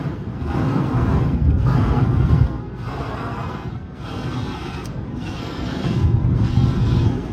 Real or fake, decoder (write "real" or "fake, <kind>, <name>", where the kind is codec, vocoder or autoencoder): fake, codec, SNAC